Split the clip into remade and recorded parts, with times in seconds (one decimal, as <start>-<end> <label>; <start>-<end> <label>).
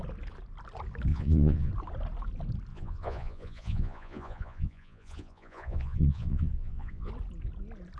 0.0-1.1 recorded; 1.1-1.7 remade; 1.7-2.7 recorded; 2.7-7.1 remade; 7.1-8.0 recorded